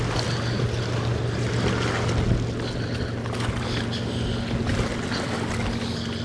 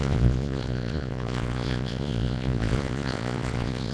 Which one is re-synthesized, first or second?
second